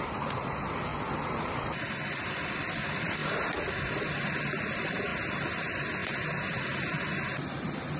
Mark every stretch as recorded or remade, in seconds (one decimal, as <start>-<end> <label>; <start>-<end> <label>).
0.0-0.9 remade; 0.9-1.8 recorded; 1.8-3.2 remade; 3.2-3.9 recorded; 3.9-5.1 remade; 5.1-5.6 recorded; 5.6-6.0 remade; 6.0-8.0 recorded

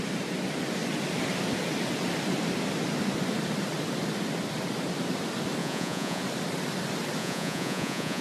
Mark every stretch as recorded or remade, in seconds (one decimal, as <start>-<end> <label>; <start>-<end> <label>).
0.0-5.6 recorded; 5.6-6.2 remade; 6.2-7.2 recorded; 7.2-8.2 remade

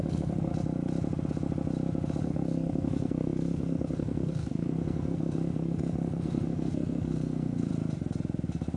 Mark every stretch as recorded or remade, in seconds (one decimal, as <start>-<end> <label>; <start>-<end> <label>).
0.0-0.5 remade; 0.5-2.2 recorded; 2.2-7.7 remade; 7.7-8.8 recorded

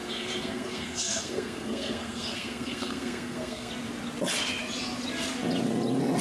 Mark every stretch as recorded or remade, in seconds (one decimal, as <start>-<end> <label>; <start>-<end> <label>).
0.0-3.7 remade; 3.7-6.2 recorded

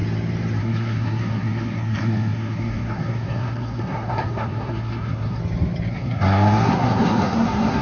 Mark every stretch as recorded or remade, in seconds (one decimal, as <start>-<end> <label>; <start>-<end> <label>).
0.0-0.6 recorded; 0.6-5.4 remade; 5.4-5.9 recorded; 5.9-7.8 remade

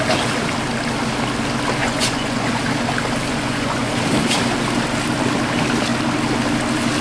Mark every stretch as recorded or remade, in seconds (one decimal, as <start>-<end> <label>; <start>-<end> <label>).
0.0-1.8 recorded; 1.8-2.6 remade; 2.6-3.3 recorded; 3.3-3.9 remade; 3.9-7.0 recorded